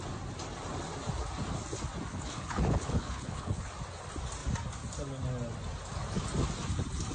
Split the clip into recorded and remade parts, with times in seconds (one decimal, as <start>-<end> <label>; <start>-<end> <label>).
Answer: 0.0-2.1 recorded; 2.1-3.7 remade; 3.7-7.1 recorded